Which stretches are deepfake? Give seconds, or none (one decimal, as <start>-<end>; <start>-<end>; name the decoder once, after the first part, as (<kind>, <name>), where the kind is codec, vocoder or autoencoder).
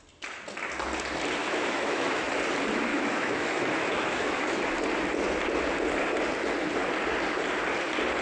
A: 1.4-2.3 (autoencoder, DAC-VAE); 2.9-4.6